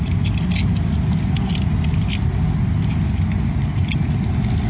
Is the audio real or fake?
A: real